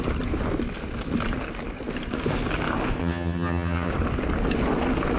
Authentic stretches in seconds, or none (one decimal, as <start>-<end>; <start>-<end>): 0.0-3.0; 3.9-5.2